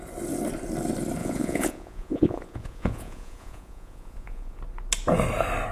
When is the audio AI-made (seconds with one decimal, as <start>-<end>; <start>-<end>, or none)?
1.2-4.6